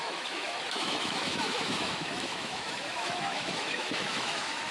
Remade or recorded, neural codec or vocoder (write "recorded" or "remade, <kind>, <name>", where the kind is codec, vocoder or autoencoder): remade, autoencoder, DAC-VAE